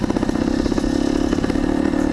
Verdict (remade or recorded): recorded